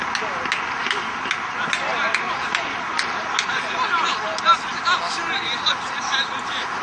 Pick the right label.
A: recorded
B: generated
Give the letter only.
A